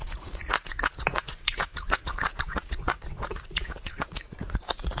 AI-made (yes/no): yes